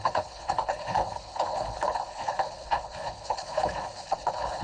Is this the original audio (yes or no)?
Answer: no